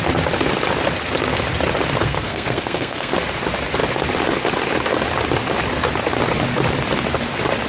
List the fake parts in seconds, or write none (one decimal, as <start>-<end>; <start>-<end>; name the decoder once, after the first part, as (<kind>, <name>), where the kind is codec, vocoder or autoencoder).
2.0-3.1 (codec, SNAC)

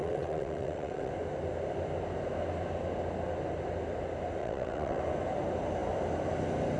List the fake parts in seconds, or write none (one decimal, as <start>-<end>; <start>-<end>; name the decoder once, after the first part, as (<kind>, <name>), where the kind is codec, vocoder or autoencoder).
0.0-1.1 (vocoder, WaveNeXt); 4.4-5.0

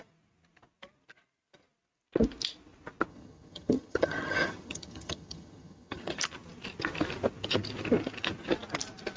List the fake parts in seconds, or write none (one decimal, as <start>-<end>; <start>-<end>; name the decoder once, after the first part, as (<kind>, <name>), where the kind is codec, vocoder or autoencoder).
3.1-6.2 (vocoder, HiFi-GAN)

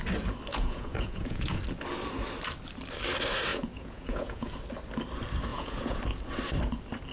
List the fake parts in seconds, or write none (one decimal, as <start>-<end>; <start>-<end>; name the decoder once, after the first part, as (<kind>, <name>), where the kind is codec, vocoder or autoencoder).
0.5-1.6 (vocoder, Vocos); 3.5-4.5; 5.5-6.0

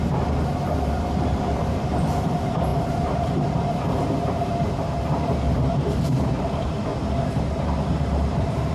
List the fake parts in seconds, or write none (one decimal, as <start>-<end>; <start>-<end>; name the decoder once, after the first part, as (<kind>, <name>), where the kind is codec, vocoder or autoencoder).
0.0-6.9 (vocoder, BigVGAN v2); 7.4-8.7